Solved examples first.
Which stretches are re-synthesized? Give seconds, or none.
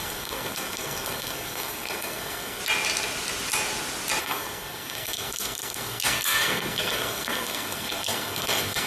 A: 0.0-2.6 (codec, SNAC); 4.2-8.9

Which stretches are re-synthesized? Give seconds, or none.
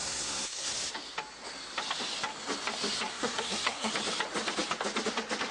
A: 0.0-0.7 (codec, SNAC); 3.1-3.9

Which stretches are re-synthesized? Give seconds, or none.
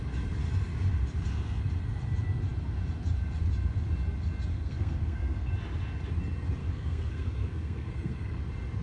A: 4.5-5.5 (codec, SNAC); 6.6-8.4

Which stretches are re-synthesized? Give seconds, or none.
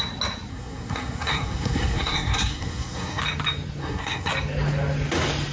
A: 0.5-3.2 (codec, SNAC); 3.8-4.3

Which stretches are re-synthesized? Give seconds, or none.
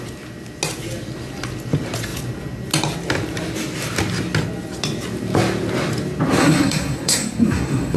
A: 6.4-8.0 (codec, SNAC)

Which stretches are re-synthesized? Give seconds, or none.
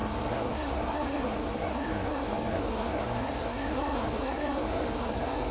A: 0.0-5.5 (codec, SNAC)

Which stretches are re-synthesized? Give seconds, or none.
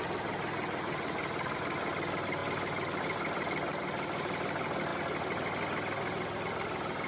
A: none